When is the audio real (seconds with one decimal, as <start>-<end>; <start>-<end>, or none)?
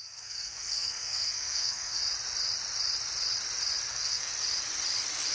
2.0-3.9; 4.3-5.3